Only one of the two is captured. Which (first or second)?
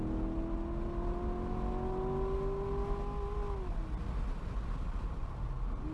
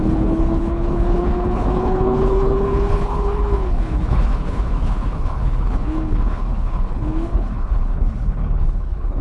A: first